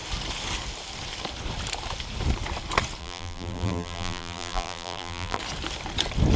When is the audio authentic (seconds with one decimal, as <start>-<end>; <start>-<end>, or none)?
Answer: 0.0-3.0; 5.4-6.4